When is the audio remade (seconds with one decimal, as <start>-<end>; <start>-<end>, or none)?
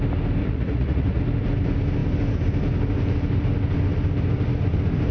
0.4-1.2